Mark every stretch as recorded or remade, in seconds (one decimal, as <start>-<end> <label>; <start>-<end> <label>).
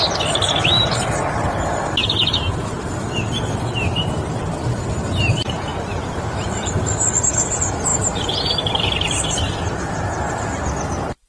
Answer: 0.0-11.3 remade